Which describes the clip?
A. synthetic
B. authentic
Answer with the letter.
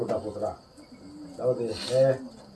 B